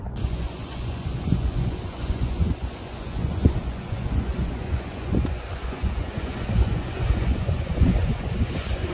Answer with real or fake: fake